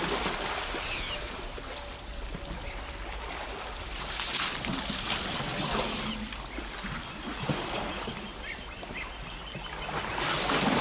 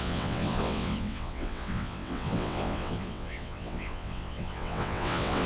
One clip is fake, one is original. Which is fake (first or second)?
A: second